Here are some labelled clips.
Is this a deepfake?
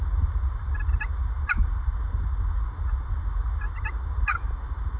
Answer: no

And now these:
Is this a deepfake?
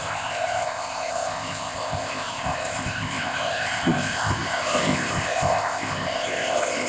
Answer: yes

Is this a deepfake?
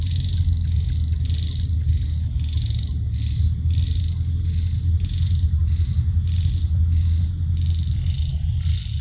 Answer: no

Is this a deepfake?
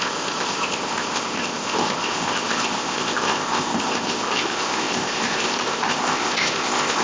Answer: yes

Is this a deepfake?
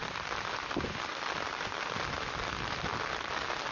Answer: no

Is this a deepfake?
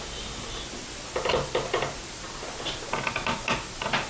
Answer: no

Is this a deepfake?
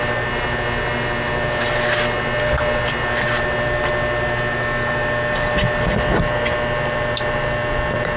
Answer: no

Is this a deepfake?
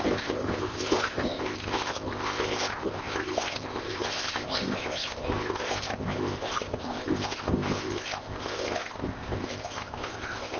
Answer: yes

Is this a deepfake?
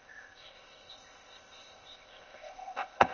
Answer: yes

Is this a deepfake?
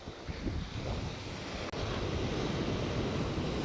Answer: no